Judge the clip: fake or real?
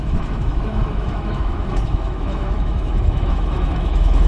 fake